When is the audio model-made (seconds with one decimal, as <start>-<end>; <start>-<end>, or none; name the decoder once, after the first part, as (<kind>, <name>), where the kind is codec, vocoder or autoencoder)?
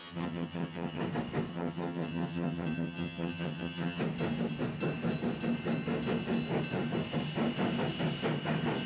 0.0-1.0 (vocoder, HiFi-GAN); 1.5-4.0